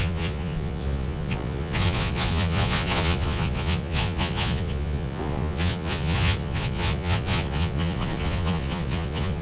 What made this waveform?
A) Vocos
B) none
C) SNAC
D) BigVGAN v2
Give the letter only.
A